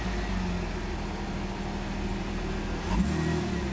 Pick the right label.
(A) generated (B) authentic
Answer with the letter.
B